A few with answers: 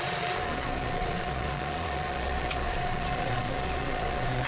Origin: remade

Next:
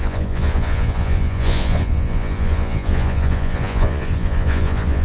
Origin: remade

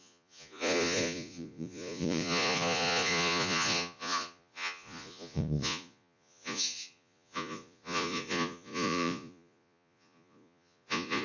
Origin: remade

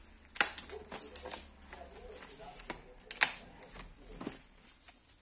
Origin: recorded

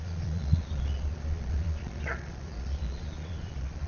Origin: remade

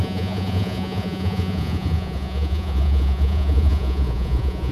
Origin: remade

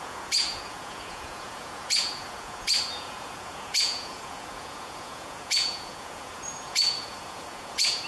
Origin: remade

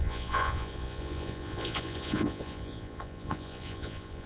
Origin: remade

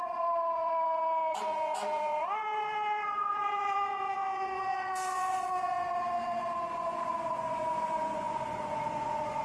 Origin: remade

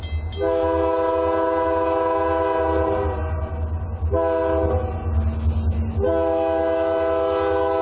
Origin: recorded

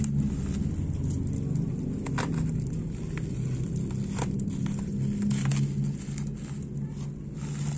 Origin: recorded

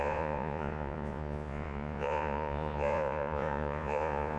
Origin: remade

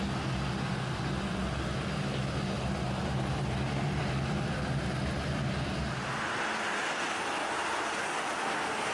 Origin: recorded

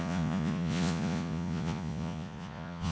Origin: remade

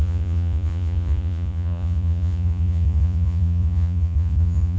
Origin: remade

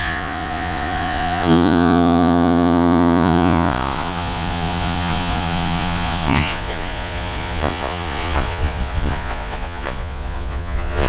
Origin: remade